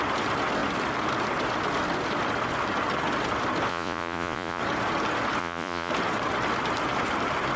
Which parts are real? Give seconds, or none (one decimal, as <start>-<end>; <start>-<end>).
0.0-3.7; 4.6-5.4; 5.9-7.6